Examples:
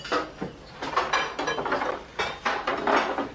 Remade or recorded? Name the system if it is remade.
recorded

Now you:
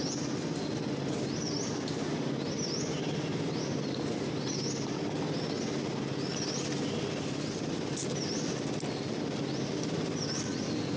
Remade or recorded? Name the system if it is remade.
recorded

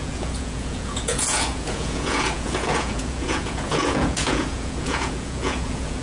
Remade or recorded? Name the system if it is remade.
remade, vocoder, Vocos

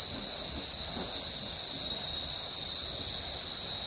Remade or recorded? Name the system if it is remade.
recorded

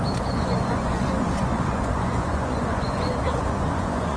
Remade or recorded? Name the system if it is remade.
remade, vocoder, Vocos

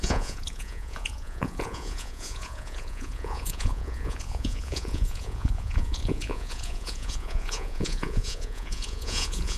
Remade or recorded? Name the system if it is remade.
remade, vocoder, Vocos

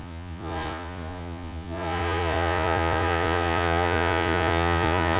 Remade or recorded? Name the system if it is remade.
remade, vocoder, Vocos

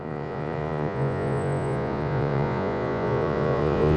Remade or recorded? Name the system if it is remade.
remade, vocoder, Vocos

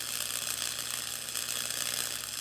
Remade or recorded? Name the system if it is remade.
recorded